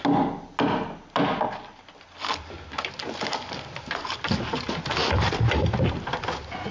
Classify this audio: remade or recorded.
recorded